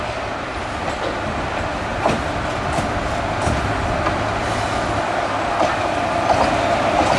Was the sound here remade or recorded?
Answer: recorded